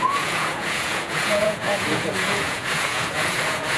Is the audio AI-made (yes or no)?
yes